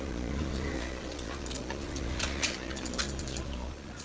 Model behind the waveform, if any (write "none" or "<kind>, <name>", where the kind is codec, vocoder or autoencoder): vocoder, Vocos